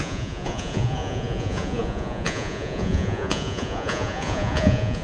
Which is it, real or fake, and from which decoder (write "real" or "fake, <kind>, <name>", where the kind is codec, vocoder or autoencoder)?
fake, vocoder, Vocos